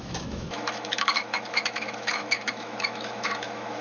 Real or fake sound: fake